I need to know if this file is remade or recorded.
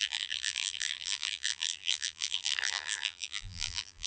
remade